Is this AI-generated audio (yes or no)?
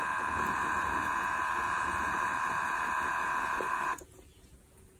yes